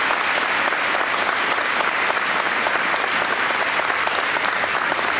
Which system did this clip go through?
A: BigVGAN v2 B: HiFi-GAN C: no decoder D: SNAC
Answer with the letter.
C